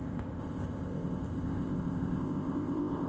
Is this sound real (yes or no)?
no